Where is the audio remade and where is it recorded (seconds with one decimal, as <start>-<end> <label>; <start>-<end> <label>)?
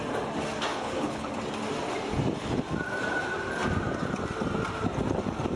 0.0-0.7 recorded; 0.7-1.3 remade; 1.3-5.6 recorded